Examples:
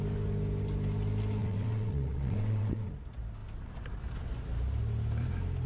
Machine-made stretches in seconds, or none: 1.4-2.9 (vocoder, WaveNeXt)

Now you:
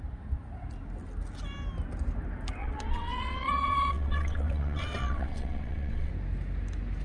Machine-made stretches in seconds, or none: 2.6-6.1 (vocoder, WaveNeXt)

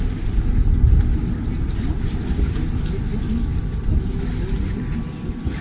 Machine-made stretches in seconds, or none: none

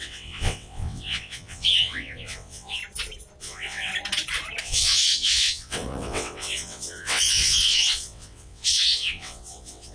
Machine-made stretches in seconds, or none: 0.0-2.8 (vocoder, WaveNeXt); 3.4-3.9; 4.6-9.9

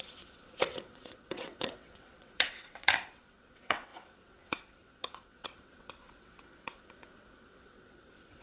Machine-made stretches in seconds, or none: 0.0-8.4 (vocoder, WaveNeXt)

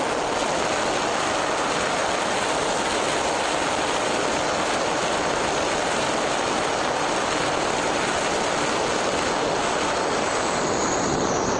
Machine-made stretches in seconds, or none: none

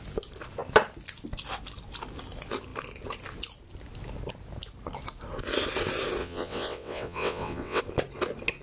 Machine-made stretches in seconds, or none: 6.2-7.8 (vocoder, WaveNeXt)